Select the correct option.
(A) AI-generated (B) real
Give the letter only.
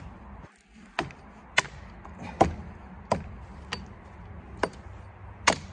B